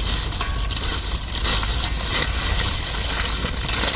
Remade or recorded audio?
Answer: recorded